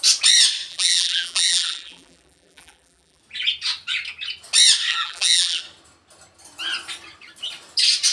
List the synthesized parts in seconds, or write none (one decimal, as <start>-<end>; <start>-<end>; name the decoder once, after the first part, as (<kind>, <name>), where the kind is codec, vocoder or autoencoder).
0.7-3.2 (vocoder, BigVGAN v2); 4.9-5.6